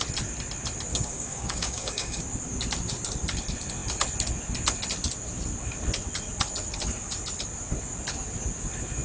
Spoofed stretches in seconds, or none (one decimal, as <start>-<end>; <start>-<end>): 0.9-2.2